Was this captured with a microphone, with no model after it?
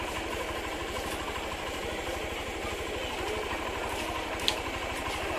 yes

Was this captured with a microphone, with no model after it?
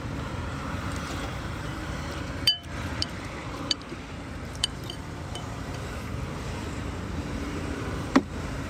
no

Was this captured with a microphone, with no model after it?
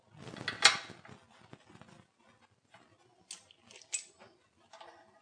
yes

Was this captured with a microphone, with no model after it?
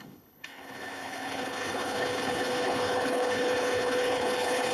no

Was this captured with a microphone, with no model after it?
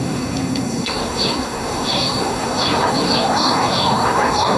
no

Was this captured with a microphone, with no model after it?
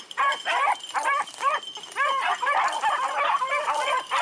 yes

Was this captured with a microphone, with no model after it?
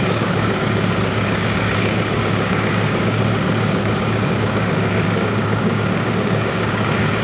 no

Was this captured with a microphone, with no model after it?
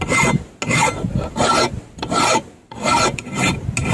yes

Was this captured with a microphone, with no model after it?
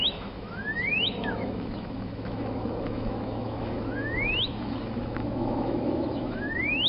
no